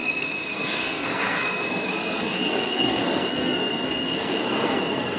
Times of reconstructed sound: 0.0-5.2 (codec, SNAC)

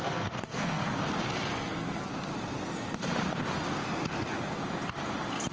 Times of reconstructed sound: 0.0-1.0 (codec, SNAC); 1.5-2.1

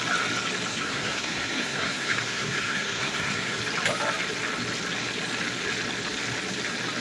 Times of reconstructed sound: 0.7-3.6 (codec, SNAC)

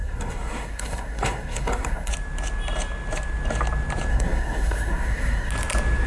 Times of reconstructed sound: 0.0-2.1 (codec, SNAC); 4.1-5.5